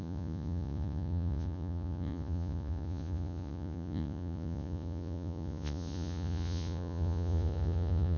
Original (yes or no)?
no